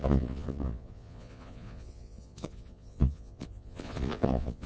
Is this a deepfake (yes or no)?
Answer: yes